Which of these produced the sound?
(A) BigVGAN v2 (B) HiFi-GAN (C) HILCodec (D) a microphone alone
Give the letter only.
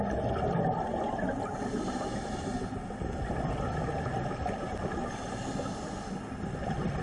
D